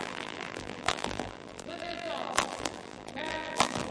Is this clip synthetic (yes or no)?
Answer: yes